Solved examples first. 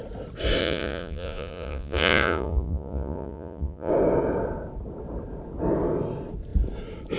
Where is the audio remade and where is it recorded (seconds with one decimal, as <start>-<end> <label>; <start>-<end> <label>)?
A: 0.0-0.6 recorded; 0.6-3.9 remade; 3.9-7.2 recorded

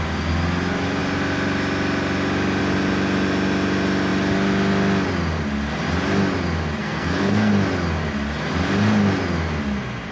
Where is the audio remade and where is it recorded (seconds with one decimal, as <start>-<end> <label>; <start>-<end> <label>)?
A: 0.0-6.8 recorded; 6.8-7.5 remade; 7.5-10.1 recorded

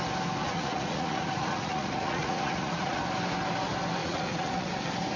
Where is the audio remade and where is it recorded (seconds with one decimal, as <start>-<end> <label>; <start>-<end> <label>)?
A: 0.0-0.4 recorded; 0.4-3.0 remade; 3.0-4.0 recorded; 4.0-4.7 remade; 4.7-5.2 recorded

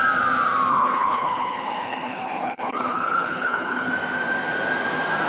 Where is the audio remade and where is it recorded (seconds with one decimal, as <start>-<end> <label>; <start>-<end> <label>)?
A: 0.0-0.7 recorded; 0.7-3.9 remade; 3.9-5.3 recorded

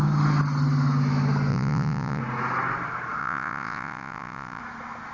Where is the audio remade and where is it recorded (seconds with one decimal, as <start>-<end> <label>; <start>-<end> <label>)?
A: 0.0-1.5 recorded; 1.5-2.2 remade; 2.2-3.2 recorded; 3.2-4.6 remade; 4.6-5.1 recorded